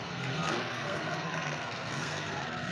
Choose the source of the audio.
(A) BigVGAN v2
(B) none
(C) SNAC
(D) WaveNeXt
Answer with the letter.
C